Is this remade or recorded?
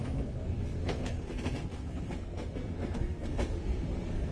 remade